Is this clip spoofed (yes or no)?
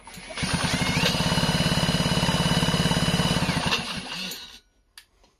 no